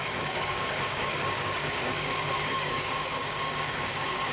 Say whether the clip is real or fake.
fake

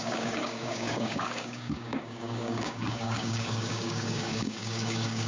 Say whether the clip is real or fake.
fake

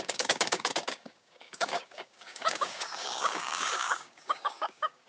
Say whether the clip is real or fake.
fake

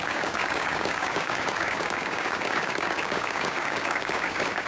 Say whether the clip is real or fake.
fake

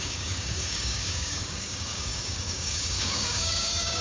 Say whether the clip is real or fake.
fake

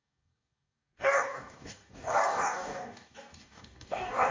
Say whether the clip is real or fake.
fake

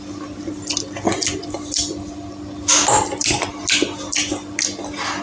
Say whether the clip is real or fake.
real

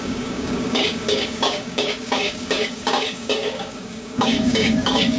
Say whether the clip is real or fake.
fake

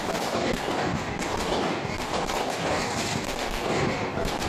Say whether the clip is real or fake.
fake